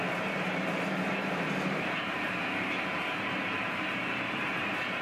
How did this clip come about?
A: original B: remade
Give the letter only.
B